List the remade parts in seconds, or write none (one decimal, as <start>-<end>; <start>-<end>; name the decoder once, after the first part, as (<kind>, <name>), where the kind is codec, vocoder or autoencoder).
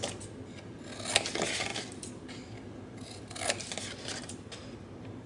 none